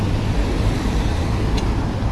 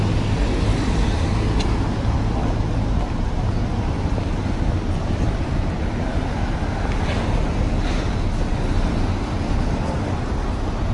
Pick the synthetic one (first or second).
first